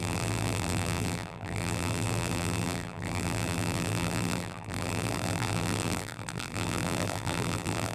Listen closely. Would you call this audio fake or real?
fake